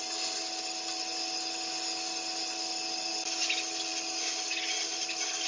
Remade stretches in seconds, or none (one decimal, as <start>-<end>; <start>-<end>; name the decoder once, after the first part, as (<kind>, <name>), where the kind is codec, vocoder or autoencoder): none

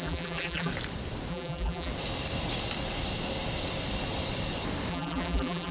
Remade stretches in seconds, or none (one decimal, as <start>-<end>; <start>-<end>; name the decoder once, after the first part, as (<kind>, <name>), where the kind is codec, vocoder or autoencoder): 0.0-0.7 (vocoder, BigVGAN v2); 1.3-1.9; 4.9-5.7

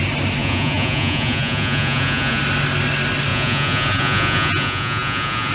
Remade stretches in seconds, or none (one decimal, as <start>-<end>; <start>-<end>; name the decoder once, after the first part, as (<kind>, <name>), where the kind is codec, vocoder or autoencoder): 0.4-2.4 (vocoder, Vocos); 3.3-5.5